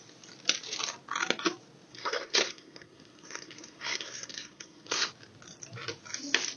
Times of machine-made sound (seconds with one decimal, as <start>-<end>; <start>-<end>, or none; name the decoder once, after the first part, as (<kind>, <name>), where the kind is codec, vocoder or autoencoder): 1.9-5.1 (codec, SNAC)